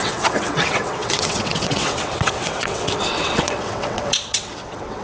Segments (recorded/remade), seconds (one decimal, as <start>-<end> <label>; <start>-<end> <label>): 0.0-5.0 remade